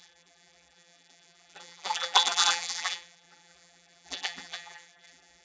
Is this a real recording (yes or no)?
no